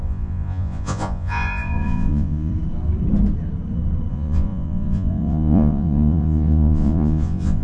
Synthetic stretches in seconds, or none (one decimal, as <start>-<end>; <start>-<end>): 0.0-2.5; 4.1-7.6